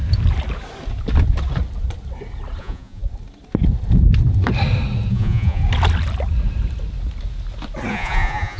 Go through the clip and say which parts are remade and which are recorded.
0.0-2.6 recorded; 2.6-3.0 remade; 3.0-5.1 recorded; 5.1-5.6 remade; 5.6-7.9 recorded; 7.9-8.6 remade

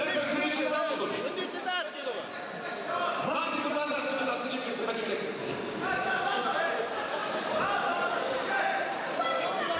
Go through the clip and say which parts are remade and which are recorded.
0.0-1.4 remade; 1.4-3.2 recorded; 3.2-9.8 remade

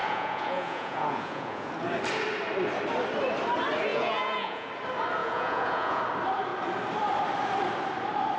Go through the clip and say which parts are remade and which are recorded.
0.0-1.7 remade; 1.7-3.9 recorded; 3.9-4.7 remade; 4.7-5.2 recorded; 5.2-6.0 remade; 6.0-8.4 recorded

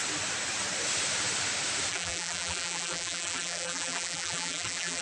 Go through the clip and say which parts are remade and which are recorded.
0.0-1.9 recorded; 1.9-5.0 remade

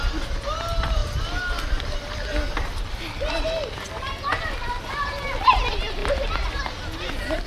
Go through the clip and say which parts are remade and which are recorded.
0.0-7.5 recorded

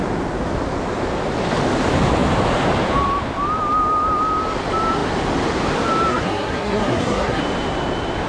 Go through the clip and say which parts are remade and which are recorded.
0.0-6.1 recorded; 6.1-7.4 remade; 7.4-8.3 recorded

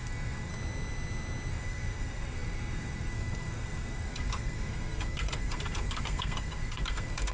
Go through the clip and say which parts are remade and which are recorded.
0.0-0.5 remade; 0.5-1.5 recorded; 1.5-7.3 remade

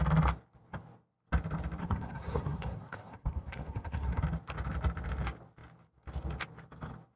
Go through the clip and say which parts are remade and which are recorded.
0.0-1.8 recorded; 1.8-4.2 remade; 4.2-7.2 recorded